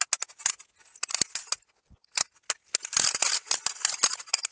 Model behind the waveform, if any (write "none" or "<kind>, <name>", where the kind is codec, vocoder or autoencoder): none